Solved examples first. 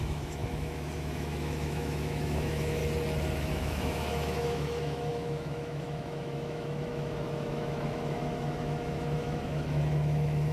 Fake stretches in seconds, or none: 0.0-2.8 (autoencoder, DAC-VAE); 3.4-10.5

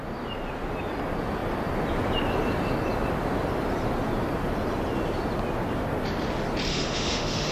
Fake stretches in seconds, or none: 6.7-7.5 (autoencoder, DAC-VAE)

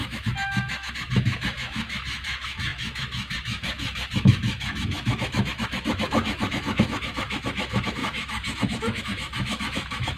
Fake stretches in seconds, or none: 0.0-10.2 (autoencoder, DAC-VAE)

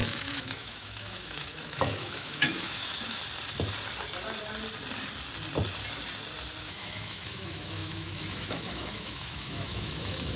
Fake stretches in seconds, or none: 0.0-3.2 (autoencoder, DAC-VAE); 6.6-10.4